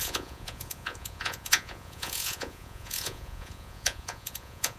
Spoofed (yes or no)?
yes